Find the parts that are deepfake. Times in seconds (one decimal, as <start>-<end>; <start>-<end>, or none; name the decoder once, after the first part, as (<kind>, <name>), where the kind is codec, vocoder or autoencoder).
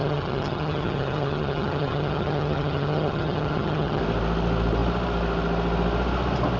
0.0-4.0 (vocoder, HiFi-GAN)